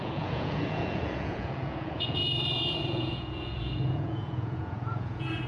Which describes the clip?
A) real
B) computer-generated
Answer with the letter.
B